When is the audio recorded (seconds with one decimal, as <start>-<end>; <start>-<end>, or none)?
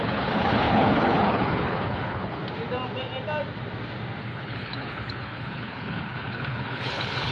2.4-4.2